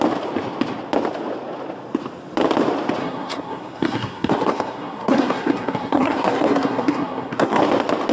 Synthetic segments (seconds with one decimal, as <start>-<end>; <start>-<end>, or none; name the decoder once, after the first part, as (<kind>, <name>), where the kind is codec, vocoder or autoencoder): 3.0-7.6 (codec, SNAC)